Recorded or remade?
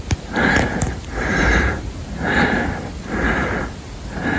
recorded